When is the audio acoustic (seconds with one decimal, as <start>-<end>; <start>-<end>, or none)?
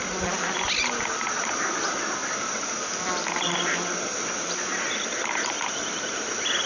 0.0-6.7